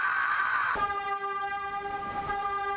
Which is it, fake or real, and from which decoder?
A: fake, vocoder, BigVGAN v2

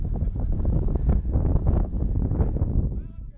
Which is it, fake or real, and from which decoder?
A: real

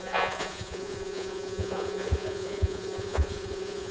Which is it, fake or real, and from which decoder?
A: fake, vocoder, Vocos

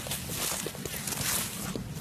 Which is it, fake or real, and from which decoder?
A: fake, vocoder, BigVGAN v2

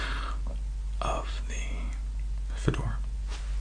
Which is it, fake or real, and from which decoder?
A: real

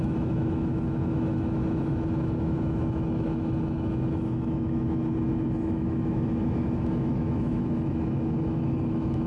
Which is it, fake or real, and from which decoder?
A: fake, autoencoder, DAC-VAE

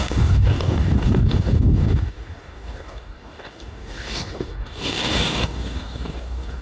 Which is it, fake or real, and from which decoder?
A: fake, codec, DAC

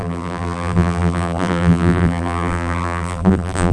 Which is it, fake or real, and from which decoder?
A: fake, vocoder, BigVGAN v2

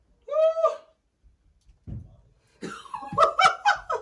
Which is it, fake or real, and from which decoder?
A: real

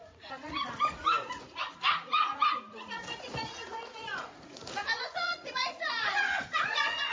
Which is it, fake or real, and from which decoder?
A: fake, vocoder, Vocos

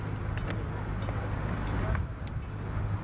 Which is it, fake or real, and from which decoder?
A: real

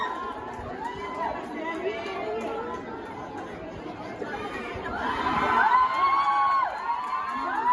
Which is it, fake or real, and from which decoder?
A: real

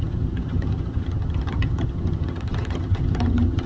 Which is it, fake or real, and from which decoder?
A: fake, vocoder, HiFi-GAN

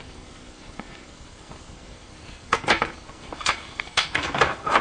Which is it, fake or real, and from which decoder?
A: fake, codec, SNAC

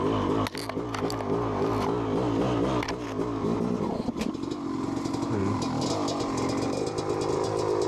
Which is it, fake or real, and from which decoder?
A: real